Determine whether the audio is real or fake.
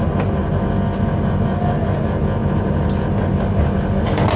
real